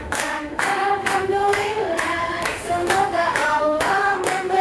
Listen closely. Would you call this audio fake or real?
fake